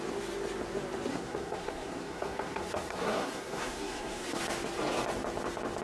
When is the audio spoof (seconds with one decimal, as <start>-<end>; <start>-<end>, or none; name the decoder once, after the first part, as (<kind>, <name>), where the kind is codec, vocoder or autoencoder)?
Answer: 1.1-4.4 (codec, SNAC)